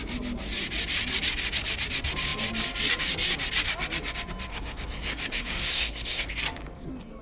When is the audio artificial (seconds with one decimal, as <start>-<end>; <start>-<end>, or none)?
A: 4.5-6.4